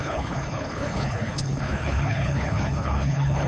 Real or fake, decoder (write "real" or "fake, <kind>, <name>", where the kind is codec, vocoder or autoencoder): fake, codec, HILCodec